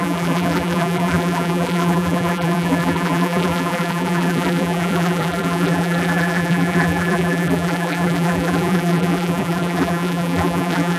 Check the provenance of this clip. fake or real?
fake